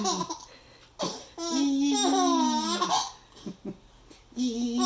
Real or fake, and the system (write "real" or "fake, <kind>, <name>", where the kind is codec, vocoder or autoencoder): real